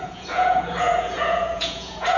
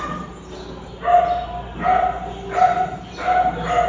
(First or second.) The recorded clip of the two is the second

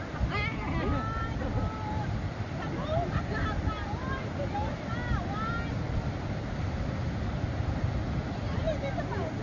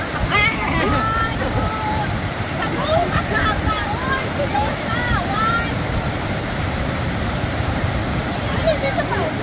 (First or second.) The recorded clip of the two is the first